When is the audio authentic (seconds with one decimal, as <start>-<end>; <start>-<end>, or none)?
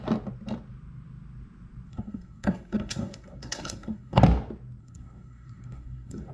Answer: 0.0-1.9; 4.2-4.8